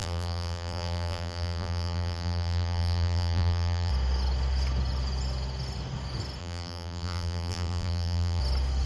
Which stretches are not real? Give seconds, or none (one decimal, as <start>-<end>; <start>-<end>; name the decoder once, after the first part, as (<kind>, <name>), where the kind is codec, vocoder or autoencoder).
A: 0.0-3.9 (vocoder, BigVGAN v2); 6.4-8.4